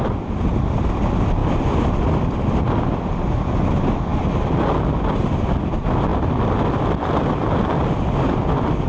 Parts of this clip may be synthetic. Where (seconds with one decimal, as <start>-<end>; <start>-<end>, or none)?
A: none